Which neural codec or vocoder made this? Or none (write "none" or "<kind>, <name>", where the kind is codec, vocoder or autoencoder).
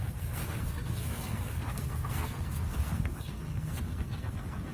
codec, SNAC